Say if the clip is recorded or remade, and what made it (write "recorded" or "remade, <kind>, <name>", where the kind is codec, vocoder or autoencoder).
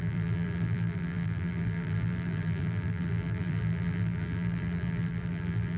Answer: remade, vocoder, BigVGAN v2